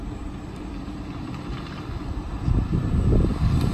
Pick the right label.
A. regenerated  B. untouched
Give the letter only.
A